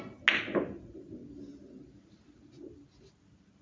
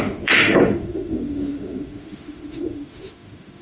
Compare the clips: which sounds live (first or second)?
first